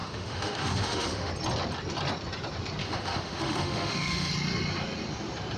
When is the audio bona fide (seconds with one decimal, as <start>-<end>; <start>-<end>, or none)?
1.3-2.8; 4.3-5.6